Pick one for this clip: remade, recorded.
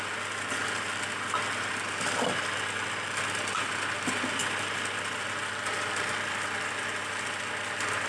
recorded